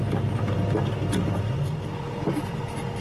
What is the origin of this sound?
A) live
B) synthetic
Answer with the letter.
A